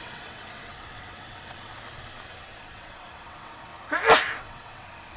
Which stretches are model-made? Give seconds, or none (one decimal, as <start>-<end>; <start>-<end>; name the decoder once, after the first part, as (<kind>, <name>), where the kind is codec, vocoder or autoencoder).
0.0-1.7 (vocoder, WaveNeXt); 2.6-3.7; 4.4-5.2